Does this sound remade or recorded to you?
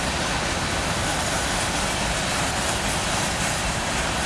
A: recorded